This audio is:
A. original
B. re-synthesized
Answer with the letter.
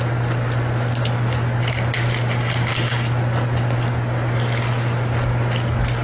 A